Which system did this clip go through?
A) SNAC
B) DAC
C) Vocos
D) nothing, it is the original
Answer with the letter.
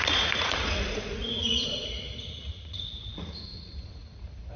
C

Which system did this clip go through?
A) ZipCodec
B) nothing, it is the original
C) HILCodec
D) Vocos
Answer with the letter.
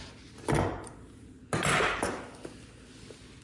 B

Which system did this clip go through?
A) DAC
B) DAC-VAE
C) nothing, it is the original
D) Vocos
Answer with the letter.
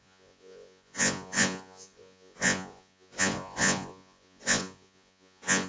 D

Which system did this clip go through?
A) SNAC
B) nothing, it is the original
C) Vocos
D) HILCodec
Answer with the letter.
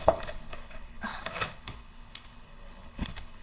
D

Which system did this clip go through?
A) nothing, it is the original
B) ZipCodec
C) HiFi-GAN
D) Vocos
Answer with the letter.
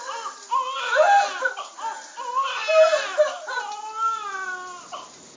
A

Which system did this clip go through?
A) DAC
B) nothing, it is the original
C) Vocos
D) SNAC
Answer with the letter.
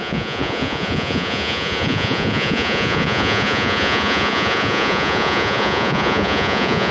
C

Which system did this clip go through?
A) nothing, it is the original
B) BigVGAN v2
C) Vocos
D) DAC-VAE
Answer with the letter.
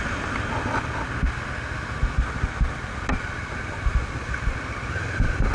A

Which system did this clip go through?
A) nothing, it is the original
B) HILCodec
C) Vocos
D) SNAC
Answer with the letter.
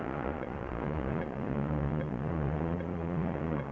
C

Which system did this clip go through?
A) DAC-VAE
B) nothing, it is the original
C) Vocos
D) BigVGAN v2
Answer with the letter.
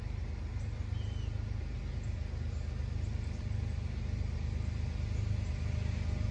B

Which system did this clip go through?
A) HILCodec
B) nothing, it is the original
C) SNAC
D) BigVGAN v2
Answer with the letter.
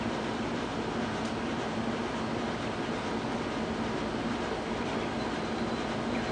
B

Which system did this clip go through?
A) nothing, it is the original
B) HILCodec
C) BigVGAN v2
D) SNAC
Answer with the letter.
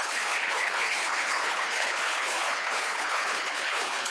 B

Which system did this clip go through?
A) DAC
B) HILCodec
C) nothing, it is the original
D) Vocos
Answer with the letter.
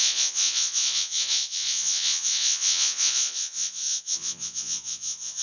D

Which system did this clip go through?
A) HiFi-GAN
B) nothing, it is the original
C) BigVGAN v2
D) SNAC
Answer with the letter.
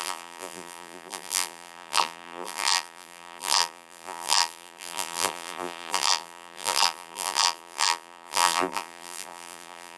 C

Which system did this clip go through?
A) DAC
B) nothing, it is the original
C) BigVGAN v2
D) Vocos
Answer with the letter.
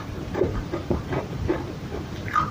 C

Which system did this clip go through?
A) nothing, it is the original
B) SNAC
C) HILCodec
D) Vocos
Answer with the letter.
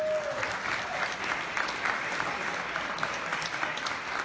A